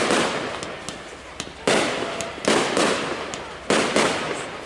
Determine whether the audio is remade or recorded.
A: recorded